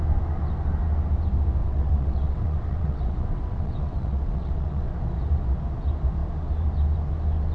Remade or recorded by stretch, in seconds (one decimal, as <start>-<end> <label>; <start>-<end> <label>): 0.0-1.6 recorded; 1.6-4.9 remade; 4.9-7.5 recorded